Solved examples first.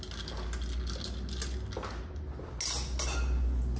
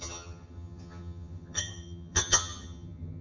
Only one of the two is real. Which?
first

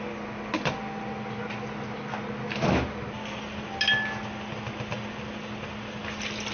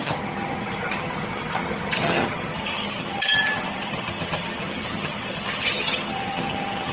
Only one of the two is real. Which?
first